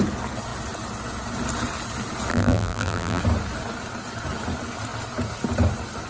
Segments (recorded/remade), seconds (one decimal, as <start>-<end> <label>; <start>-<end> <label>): 0.0-2.3 recorded; 2.3-3.2 remade; 3.2-6.1 recorded

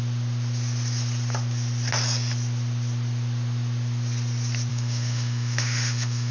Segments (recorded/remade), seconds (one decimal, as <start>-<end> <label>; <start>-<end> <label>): 0.0-4.7 recorded; 4.7-6.3 remade

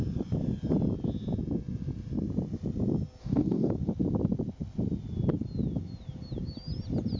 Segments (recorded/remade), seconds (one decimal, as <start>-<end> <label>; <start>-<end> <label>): 0.0-3.2 recorded; 3.2-3.7 remade; 3.7-7.2 recorded

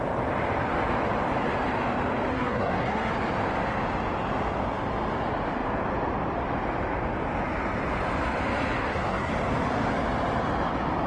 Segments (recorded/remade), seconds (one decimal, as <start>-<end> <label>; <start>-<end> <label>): 0.0-2.3 recorded; 2.3-3.1 remade; 3.1-8.8 recorded; 8.8-9.3 remade; 9.3-11.1 recorded

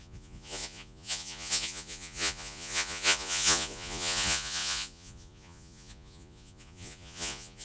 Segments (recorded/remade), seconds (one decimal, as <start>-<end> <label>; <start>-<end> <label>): 0.0-7.6 remade

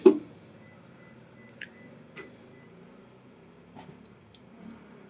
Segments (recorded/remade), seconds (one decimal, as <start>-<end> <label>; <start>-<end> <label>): 0.0-5.1 recorded